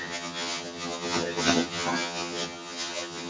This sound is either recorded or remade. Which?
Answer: remade